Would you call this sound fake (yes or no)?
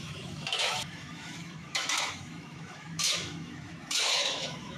yes